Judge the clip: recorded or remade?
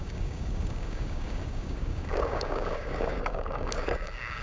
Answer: remade